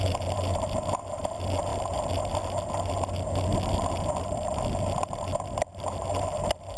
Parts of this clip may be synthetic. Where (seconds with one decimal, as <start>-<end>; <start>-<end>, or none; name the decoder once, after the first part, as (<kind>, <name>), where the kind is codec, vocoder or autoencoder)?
none